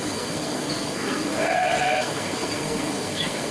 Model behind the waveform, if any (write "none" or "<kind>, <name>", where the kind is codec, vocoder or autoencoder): codec, SNAC